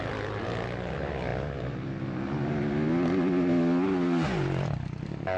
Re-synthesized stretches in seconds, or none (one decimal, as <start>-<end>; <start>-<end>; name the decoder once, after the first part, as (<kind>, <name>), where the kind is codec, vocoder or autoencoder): none